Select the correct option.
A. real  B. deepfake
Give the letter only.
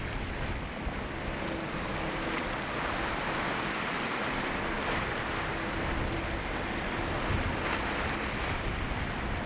A